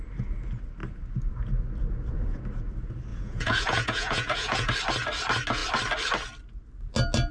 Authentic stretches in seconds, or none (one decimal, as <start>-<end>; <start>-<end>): 0.0-3.1; 4.7-7.3